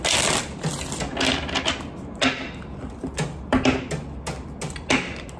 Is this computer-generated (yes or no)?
no